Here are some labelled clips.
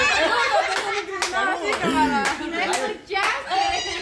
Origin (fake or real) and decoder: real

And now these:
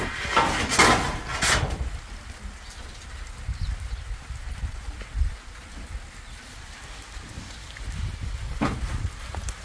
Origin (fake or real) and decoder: real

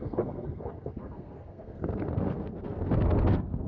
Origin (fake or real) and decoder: fake, codec, SNAC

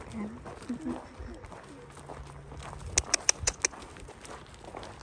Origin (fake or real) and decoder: real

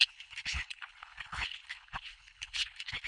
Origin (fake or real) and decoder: fake, codec, HILCodec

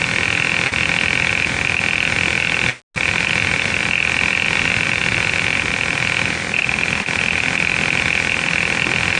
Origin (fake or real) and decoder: real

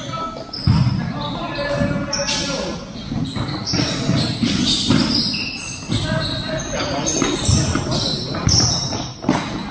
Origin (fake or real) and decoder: real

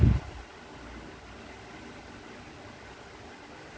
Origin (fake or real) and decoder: real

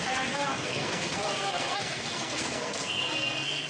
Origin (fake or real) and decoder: fake, codec, SNAC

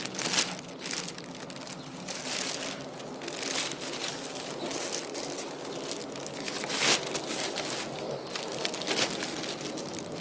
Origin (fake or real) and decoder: real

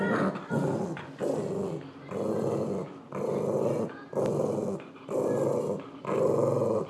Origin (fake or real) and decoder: real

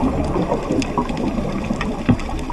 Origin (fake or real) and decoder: real